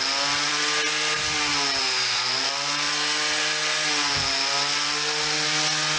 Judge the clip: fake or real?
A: real